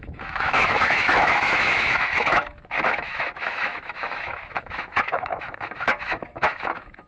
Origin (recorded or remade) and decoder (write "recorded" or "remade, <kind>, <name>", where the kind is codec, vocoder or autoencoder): remade, autoencoder, DAC-VAE